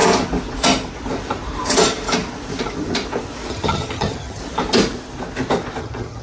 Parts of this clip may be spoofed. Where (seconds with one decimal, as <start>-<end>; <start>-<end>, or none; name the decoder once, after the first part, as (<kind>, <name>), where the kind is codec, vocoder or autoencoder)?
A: 3.5-4.4 (vocoder, HiFi-GAN); 5.8-6.2